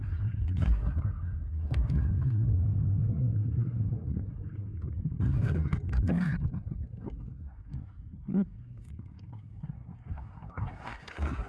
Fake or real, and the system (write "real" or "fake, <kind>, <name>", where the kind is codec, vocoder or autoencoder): fake, codec, SNAC